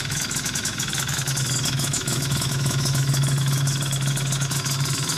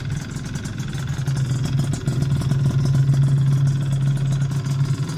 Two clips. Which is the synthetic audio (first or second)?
first